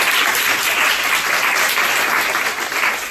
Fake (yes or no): no